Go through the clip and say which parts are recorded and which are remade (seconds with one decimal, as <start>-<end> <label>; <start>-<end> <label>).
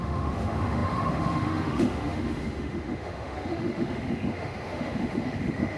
0.0-5.8 remade